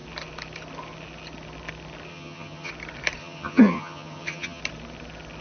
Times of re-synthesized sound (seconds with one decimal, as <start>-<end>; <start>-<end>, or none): 2.1-2.7; 3.2-4.6